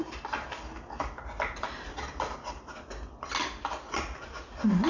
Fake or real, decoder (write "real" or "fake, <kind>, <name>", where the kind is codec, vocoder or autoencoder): real